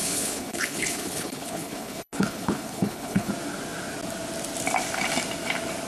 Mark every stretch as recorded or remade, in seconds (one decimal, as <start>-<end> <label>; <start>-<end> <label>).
0.0-3.3 remade; 3.3-5.9 recorded